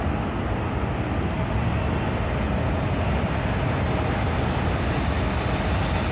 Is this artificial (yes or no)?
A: no